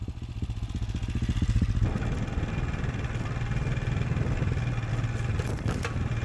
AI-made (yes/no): no